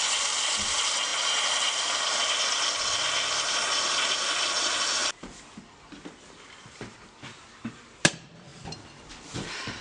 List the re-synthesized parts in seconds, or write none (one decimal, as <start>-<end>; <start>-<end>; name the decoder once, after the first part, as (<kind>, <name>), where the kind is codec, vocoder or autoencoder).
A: 0.0-8.5 (vocoder, BigVGAN v2); 9.0-9.8